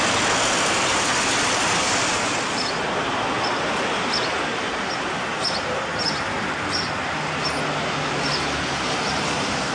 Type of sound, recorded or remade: recorded